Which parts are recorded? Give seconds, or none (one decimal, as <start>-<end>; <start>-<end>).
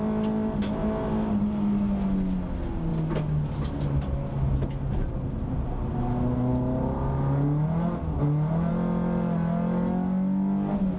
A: 0.0-11.0